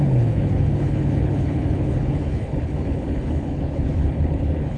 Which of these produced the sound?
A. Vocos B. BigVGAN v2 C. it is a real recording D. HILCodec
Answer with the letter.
D